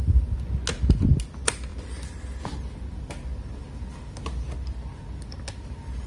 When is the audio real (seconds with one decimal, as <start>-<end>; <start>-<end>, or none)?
0.0-6.1